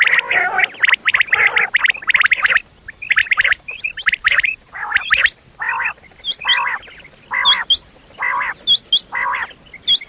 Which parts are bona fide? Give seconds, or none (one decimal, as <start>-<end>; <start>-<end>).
0.0-3.2; 5.1-10.1